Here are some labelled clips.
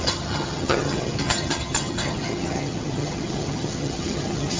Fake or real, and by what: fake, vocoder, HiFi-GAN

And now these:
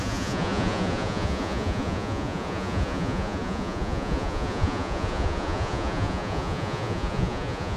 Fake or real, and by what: fake, vocoder, Vocos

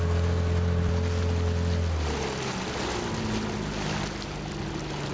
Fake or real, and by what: real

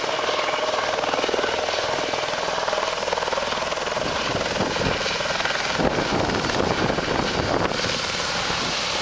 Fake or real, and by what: real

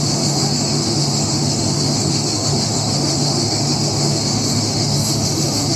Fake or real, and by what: fake, autoencoder, DAC-VAE